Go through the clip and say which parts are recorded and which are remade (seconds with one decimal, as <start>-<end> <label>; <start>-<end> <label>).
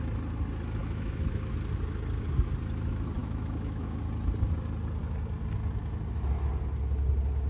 0.0-0.8 recorded; 0.8-1.5 remade; 1.5-3.2 recorded; 3.2-4.0 remade; 4.0-7.5 recorded